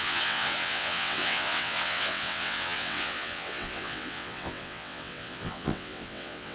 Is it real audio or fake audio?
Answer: fake